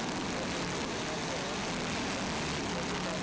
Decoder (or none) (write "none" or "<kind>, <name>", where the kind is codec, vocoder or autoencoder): none